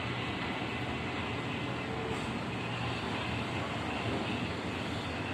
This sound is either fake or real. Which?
real